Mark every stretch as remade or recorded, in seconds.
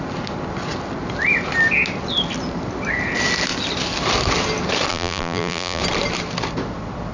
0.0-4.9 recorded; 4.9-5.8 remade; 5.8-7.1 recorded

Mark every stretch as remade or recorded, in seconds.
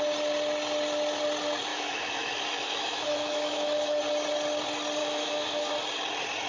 0.0-1.7 recorded; 1.7-4.0 remade; 4.0-5.0 recorded; 5.0-5.7 remade; 5.7-6.5 recorded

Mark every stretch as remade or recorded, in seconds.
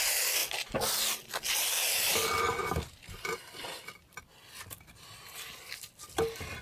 0.0-6.6 recorded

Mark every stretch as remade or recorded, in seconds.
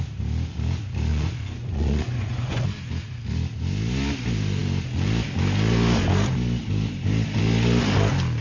0.0-1.1 recorded; 1.1-2.6 remade; 2.6-8.4 recorded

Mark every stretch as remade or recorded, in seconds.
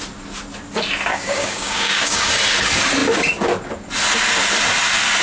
0.0-1.1 recorded; 1.1-2.3 remade; 2.3-5.2 recorded